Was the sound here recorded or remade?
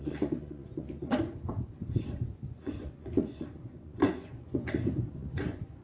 remade